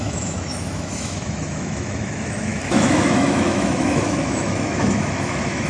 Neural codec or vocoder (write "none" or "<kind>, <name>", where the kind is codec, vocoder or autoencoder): autoencoder, DAC-VAE